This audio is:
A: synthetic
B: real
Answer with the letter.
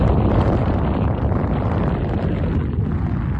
B